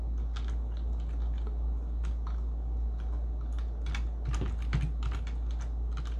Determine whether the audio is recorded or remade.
recorded